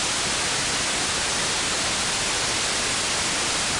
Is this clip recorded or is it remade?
recorded